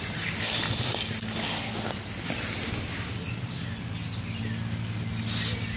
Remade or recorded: recorded